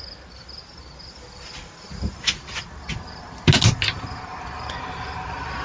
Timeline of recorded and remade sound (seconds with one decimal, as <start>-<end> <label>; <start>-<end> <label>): 0.0-5.6 recorded